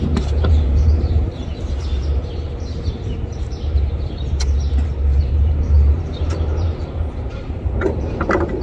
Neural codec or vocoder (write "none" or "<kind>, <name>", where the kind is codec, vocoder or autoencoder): vocoder, BigVGAN v2